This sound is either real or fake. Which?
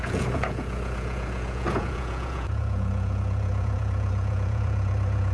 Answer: fake